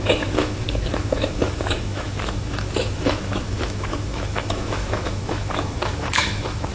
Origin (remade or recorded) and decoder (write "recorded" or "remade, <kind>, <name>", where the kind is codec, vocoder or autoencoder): remade, autoencoder, DAC-VAE